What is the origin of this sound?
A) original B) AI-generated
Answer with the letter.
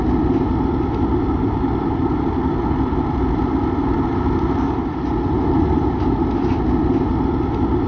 A